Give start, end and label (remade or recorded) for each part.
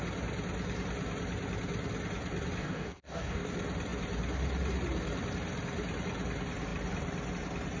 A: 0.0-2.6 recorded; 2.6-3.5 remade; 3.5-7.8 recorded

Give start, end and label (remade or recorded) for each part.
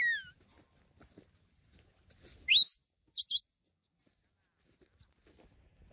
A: 0.0-2.8 recorded; 2.8-3.9 remade; 3.9-5.9 recorded